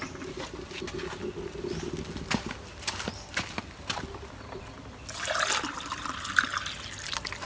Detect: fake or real real